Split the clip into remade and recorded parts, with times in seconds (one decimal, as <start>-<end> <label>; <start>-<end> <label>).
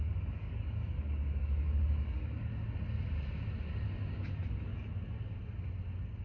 0.0-2.5 remade; 2.5-4.1 recorded; 4.1-4.7 remade; 4.7-6.2 recorded